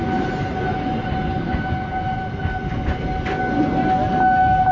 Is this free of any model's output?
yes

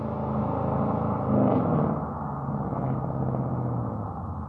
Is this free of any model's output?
yes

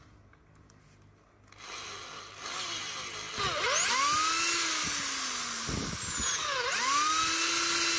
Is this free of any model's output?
yes